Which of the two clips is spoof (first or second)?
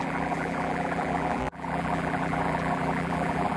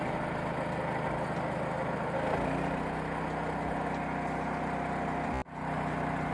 first